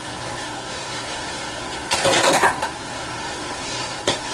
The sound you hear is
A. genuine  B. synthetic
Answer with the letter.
B